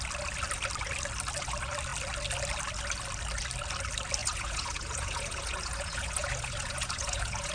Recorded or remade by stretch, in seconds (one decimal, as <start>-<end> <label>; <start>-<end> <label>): 0.0-4.2 recorded; 4.2-7.5 remade